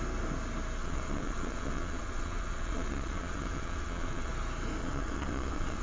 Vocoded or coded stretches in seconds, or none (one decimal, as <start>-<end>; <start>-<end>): 0.8-4.3; 4.8-5.8